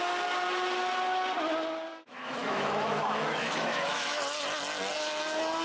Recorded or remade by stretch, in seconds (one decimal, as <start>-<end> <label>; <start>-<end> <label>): 0.0-1.9 recorded; 1.9-4.2 remade; 4.2-5.6 recorded